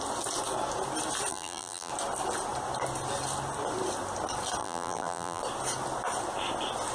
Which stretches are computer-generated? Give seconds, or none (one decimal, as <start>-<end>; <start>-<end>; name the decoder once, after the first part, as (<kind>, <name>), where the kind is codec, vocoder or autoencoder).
1.3-1.9 (vocoder, BigVGAN v2); 4.6-5.4